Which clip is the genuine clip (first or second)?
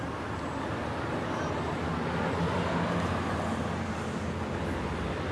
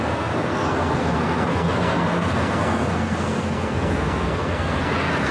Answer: first